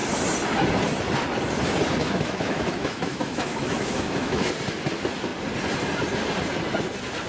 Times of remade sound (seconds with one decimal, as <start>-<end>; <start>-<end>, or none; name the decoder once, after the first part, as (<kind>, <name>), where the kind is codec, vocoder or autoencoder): 2.0-4.5 (autoencoder, DAC-VAE)